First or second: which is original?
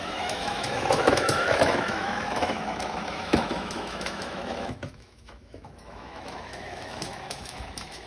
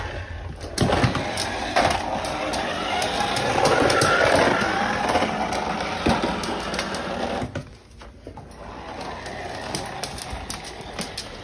second